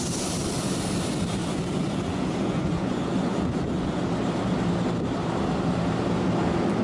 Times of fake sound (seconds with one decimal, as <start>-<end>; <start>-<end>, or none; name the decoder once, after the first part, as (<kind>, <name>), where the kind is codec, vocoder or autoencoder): 1.4-4.0 (vocoder, Vocos)